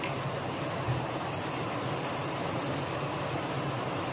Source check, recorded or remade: recorded